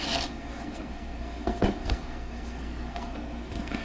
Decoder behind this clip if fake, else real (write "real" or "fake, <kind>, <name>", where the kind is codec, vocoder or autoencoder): fake, codec, SNAC